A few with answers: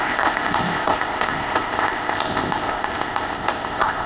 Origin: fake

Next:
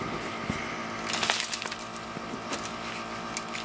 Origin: real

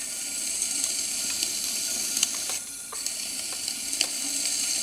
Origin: fake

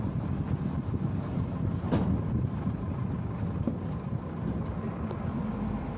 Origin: real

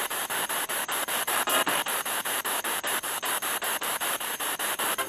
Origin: fake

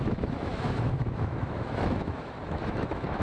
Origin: fake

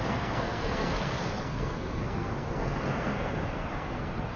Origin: fake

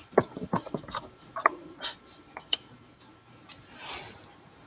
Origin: fake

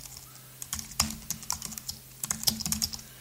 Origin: real